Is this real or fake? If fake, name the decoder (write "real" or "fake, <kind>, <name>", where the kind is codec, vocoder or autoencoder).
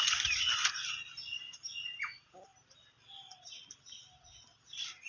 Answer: real